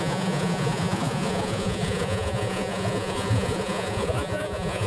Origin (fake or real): fake